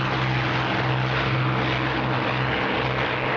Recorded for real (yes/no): yes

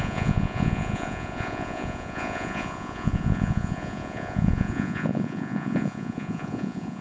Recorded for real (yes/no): no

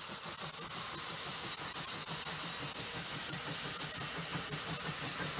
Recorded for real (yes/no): yes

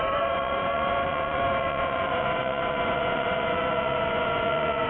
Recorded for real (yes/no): no